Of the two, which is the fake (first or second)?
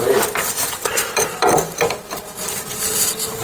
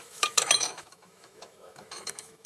second